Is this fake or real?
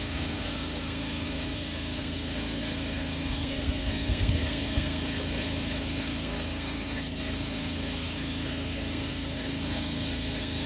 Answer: fake